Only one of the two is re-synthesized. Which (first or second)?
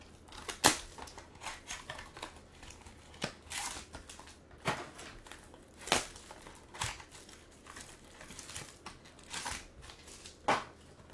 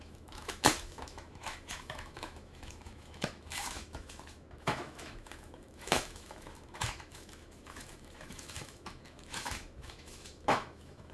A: second